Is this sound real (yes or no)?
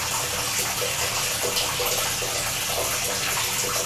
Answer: yes